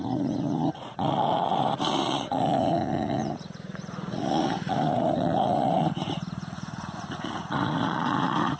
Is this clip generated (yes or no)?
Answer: yes